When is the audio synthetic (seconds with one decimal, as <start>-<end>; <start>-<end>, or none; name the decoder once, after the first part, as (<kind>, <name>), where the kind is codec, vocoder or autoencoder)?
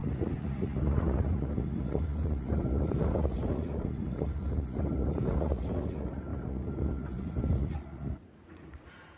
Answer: 0.0-9.2 (vocoder, Vocos)